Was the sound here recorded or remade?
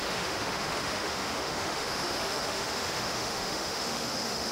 remade